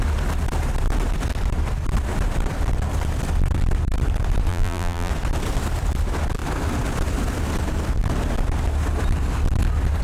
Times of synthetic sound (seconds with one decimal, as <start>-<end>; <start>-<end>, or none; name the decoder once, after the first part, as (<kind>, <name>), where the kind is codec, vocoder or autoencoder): 4.5-5.1 (vocoder, BigVGAN v2)